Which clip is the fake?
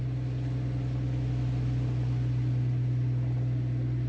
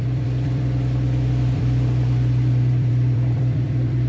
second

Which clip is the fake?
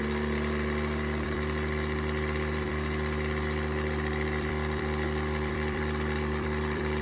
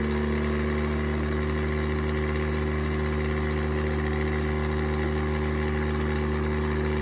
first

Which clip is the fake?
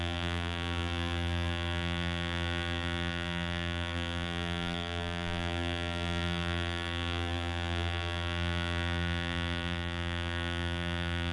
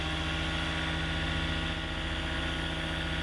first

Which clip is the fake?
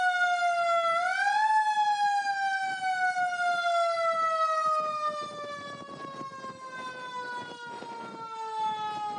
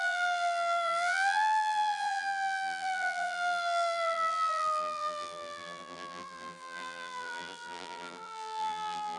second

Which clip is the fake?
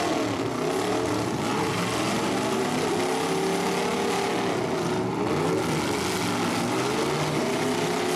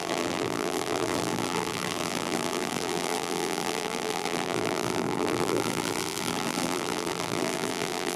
second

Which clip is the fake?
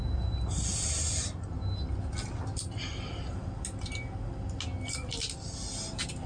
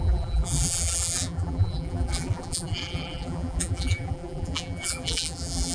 second